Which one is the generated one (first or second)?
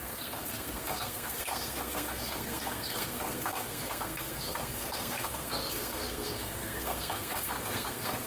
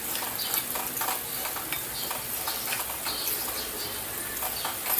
first